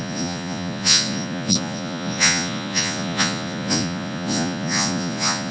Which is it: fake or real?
fake